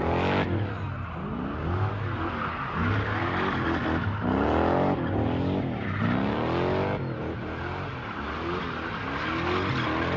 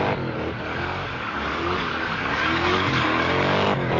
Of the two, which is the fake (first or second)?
second